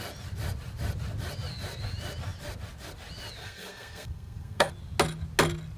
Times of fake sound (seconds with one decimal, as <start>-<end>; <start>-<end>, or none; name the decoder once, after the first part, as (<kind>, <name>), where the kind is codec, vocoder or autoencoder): 3.4-4.7 (codec, SNAC)